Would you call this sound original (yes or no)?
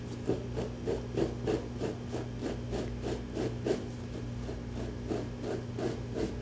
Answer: yes